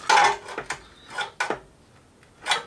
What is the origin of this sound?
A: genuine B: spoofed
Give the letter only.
A